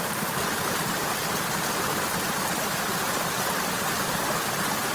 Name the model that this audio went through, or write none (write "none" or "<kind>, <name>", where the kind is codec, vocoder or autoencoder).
none